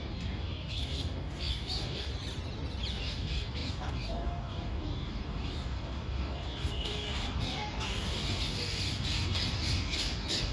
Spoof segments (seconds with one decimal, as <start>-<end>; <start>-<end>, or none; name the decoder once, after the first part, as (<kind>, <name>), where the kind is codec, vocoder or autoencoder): 0.0-2.1 (codec, DAC); 2.9-10.5

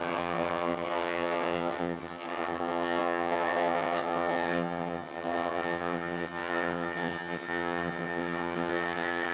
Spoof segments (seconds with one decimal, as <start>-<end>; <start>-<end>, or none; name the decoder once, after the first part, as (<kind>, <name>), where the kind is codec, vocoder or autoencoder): 0.0-9.3 (vocoder, HiFi-GAN)